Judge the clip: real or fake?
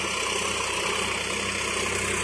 real